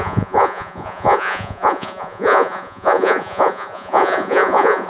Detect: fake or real fake